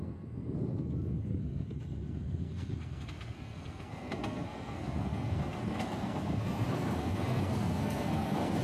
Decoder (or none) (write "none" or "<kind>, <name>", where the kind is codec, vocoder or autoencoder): codec, SNAC